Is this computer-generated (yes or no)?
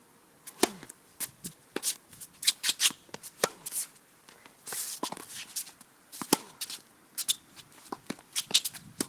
no